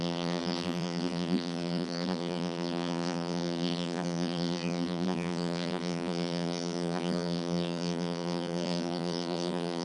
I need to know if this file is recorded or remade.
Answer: remade